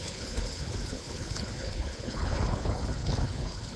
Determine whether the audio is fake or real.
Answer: fake